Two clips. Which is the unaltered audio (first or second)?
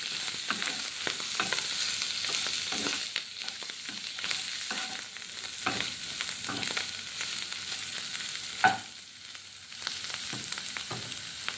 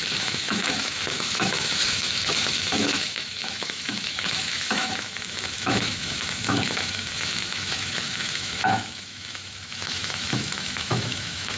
first